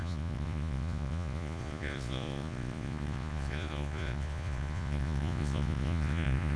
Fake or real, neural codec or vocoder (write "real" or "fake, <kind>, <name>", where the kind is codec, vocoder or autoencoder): fake, vocoder, Vocos